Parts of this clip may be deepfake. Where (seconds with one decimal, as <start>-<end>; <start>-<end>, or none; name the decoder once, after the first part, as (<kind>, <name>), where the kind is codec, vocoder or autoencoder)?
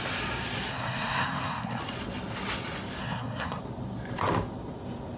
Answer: 0.7-1.8 (codec, SNAC); 3.0-3.6